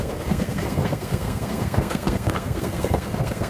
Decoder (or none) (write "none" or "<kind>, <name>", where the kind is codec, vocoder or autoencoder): codec, SNAC